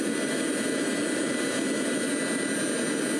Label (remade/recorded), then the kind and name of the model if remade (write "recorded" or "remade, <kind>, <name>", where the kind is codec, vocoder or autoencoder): recorded